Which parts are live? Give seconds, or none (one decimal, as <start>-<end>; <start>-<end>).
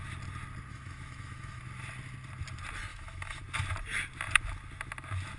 0.0-0.7; 1.6-2.9; 3.4-5.4